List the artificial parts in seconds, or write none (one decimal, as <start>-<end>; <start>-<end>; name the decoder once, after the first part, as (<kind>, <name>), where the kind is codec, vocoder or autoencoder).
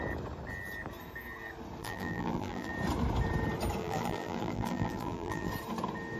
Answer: 1.8-2.7 (vocoder, BigVGAN v2); 3.8-5.5